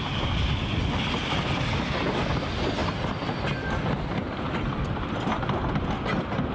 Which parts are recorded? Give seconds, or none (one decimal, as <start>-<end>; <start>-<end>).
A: 0.0-6.5